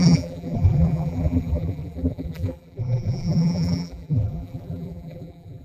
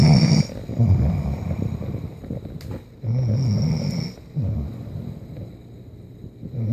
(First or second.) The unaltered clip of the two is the second